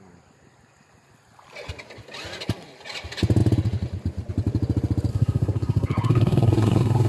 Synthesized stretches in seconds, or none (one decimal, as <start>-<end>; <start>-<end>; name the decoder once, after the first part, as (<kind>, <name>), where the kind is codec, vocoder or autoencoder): 5.1-7.1 (codec, SNAC)